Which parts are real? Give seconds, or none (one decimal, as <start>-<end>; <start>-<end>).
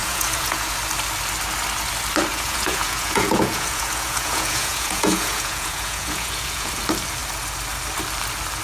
0.7-2.3; 6.7-8.6